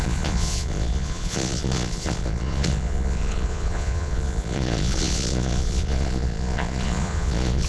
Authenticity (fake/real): fake